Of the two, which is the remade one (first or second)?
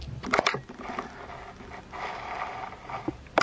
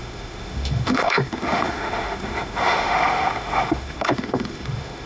second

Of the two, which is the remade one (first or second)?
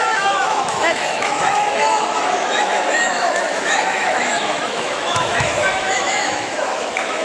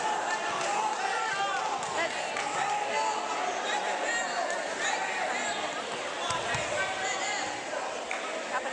first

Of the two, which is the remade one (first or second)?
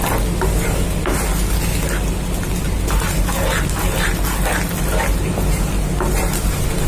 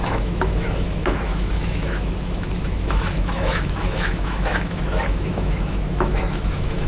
second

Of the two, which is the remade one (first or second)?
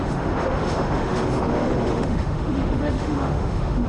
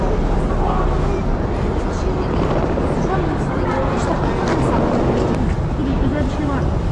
first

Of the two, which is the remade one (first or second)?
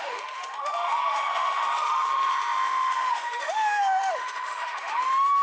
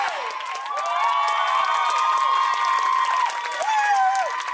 first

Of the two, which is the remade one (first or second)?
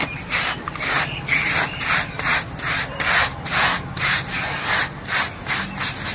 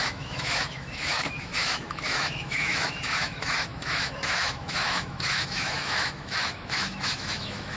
second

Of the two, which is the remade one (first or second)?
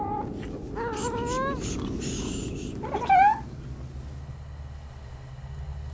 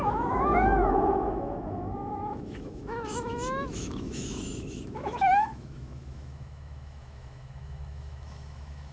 second